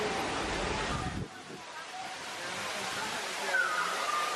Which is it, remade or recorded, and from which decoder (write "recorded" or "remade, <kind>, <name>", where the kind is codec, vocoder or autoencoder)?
recorded